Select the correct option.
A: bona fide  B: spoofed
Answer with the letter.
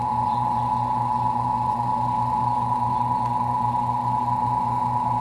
B